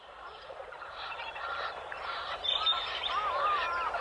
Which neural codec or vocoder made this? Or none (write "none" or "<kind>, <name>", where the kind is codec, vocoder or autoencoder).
vocoder, BigVGAN v2